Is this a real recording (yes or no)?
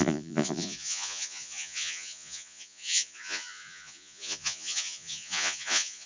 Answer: no